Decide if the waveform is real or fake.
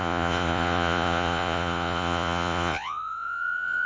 fake